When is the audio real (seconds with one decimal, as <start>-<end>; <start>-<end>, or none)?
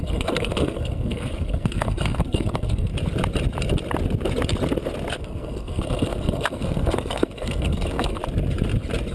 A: 2.9-5.2; 8.2-9.1